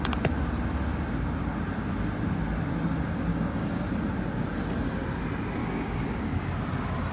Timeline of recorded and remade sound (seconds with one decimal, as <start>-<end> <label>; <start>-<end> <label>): 0.0-3.3 recorded; 3.3-3.9 remade; 3.9-5.6 recorded; 5.6-6.4 remade; 6.4-7.1 recorded